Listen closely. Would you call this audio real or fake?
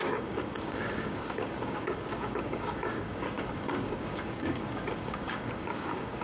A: fake